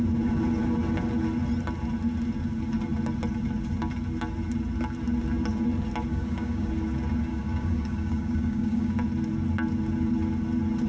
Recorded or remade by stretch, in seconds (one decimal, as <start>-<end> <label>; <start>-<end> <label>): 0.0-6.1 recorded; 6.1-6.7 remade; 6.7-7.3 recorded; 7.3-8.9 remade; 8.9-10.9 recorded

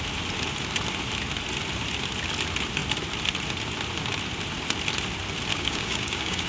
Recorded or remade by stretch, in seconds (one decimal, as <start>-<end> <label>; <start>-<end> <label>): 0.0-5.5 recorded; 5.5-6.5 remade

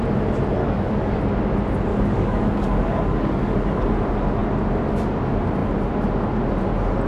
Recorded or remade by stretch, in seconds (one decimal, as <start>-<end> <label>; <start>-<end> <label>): 0.0-0.6 recorded; 0.6-1.2 remade; 1.2-1.9 recorded; 1.9-3.8 remade; 3.8-7.1 recorded

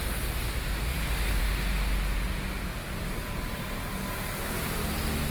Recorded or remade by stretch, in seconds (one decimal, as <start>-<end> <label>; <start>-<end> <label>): 0.0-0.9 recorded; 0.9-1.4 remade; 1.4-5.3 recorded

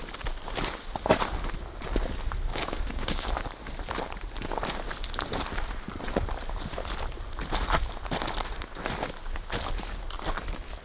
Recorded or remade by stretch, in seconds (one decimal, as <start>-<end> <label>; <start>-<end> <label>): 0.0-2.5 recorded; 2.5-3.3 remade; 3.3-10.8 recorded

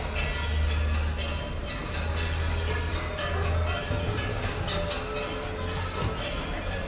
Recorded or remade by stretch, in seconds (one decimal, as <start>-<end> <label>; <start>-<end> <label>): 0.0-4.3 recorded; 4.3-4.9 remade; 4.9-6.9 recorded

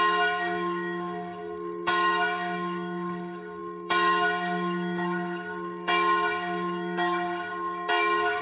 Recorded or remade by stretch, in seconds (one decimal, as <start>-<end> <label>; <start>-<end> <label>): 0.0-8.4 remade

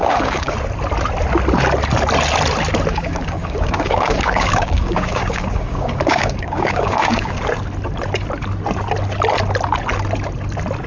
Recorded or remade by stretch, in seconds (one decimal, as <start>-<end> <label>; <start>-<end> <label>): 0.0-0.5 remade; 0.5-2.9 recorded; 2.9-7.4 remade; 7.4-10.9 recorded